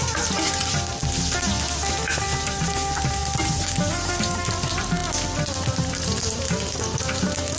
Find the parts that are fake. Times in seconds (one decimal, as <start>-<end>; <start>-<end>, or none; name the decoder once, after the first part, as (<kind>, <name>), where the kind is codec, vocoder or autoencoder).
0.0-1.0 (vocoder, BigVGAN v2); 1.9-3.2; 3.9-5.0; 5.7-7.6

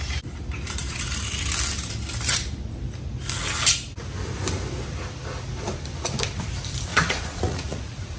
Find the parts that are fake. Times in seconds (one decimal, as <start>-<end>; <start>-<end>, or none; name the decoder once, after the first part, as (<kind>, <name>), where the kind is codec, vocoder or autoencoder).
6.9-8.2 (vocoder, Vocos)

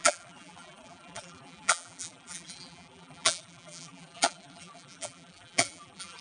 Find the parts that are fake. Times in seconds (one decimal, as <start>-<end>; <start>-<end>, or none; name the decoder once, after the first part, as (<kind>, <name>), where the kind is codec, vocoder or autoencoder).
0.0-6.2 (vocoder, BigVGAN v2)

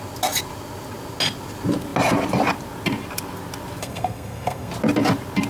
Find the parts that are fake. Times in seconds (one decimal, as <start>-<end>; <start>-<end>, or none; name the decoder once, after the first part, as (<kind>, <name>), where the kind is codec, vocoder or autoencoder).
3.8-4.7 (codec, SNAC)